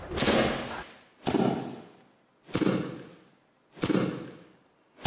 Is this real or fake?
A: real